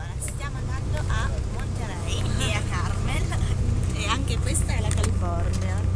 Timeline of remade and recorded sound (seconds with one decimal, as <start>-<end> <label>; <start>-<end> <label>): 0.0-2.5 recorded; 2.5-3.4 remade; 3.4-4.4 recorded; 4.4-5.0 remade; 5.0-6.0 recorded

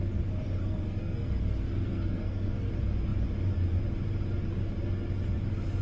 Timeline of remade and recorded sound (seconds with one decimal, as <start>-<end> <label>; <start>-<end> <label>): 0.0-0.6 recorded; 0.6-2.7 remade; 2.7-5.8 recorded

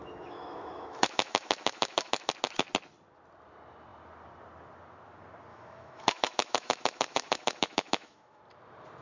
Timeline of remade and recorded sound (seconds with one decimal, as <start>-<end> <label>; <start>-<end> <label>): 0.0-2.3 remade; 2.3-5.5 recorded; 5.5-8.4 remade; 8.4-9.0 recorded